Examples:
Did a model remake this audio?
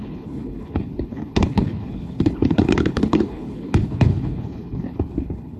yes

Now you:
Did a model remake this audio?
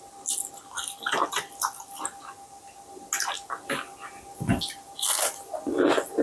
no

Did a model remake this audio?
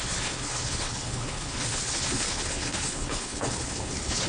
yes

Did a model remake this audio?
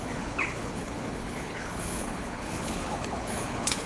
yes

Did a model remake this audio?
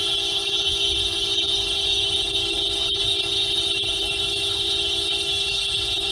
yes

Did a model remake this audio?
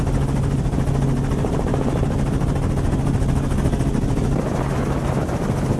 no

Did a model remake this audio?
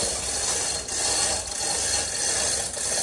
no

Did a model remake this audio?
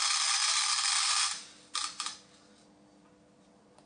no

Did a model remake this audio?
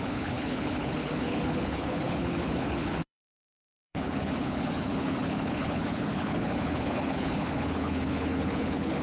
yes